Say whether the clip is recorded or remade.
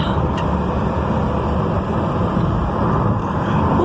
recorded